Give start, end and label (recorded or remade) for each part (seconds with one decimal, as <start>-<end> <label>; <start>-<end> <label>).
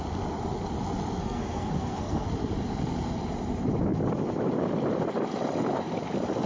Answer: 0.0-1.2 recorded; 1.2-2.3 remade; 2.3-6.5 recorded